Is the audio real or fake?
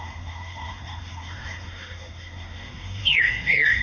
fake